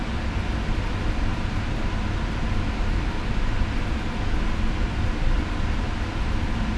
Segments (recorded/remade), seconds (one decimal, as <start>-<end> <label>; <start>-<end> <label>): 0.0-6.8 recorded